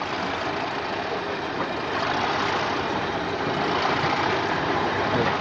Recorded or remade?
recorded